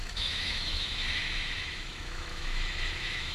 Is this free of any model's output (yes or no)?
no